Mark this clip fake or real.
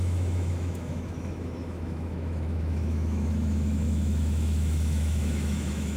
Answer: fake